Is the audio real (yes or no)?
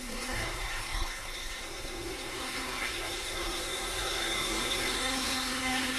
no